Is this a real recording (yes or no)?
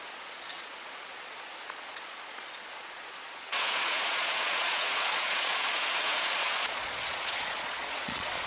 no